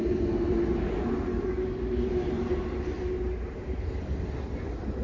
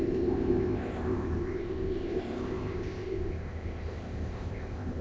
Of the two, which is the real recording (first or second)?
first